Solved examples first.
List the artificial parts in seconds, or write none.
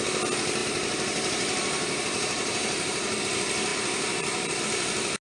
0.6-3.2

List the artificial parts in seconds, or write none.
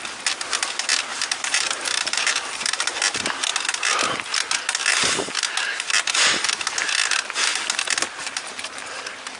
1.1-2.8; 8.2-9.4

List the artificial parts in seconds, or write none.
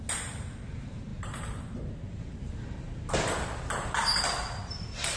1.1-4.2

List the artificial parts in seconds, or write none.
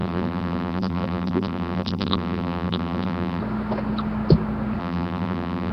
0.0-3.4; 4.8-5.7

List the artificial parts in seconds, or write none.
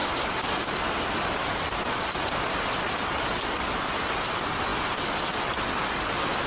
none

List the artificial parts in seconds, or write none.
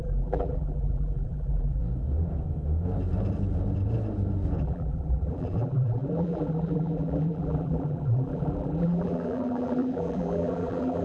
0.0-1.8; 4.6-11.0